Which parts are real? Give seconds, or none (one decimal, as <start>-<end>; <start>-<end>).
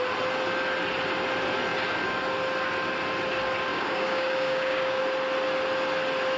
0.0-3.7; 5.0-6.4